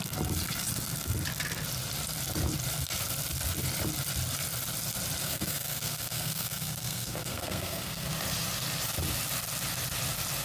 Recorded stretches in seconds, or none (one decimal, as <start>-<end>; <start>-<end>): 0.0-5.2; 8.1-10.4